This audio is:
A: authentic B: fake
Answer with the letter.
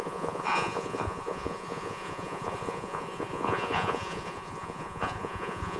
B